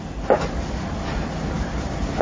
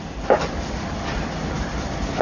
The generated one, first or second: second